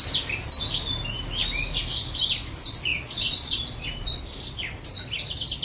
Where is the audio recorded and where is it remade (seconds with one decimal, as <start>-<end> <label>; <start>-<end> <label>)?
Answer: 0.0-2.9 recorded; 2.9-4.2 remade; 4.2-5.6 recorded